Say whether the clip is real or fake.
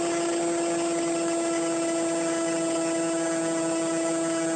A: real